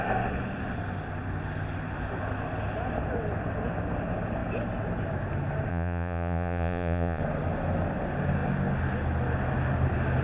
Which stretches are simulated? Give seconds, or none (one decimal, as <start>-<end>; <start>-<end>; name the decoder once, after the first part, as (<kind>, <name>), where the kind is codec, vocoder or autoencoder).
5.7-7.2 (vocoder, Vocos)